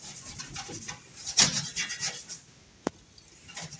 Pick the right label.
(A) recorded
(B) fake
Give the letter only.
A